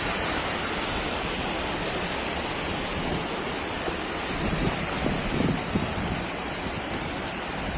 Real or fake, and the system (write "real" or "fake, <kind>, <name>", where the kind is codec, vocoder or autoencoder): real